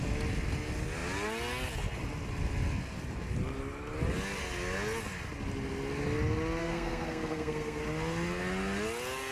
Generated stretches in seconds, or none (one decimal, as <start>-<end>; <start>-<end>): 6.6-7.8